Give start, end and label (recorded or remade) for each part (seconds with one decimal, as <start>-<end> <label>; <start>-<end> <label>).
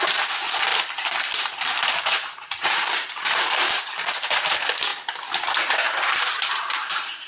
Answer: 0.0-0.7 remade; 0.7-1.5 recorded; 1.5-4.9 remade; 4.9-5.6 recorded; 5.6-7.3 remade